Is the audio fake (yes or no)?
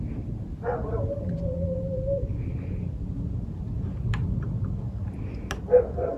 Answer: no